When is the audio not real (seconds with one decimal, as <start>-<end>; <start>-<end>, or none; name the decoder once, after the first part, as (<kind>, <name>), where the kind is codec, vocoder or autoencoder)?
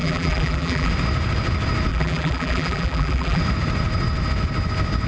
0.0-0.9 (vocoder, BigVGAN v2); 1.9-3.4